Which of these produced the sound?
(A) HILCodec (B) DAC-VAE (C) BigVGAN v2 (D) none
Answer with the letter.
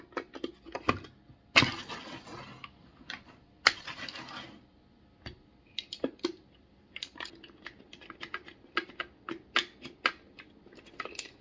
D